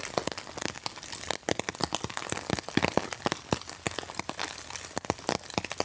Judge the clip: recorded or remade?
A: recorded